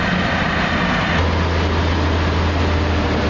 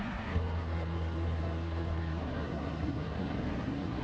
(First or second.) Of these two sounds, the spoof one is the second